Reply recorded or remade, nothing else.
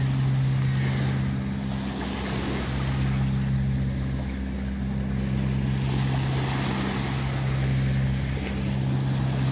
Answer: recorded